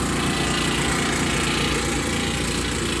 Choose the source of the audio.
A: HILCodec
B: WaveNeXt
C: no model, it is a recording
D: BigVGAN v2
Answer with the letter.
C